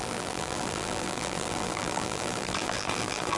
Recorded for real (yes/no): no